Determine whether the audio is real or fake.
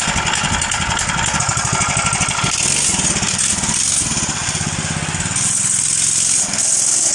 real